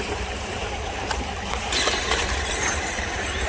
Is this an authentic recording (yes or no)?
no